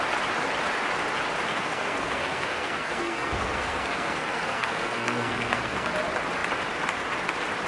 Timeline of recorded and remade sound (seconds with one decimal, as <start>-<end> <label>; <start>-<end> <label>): 0.0-1.5 recorded; 1.5-5.9 remade; 5.9-7.7 recorded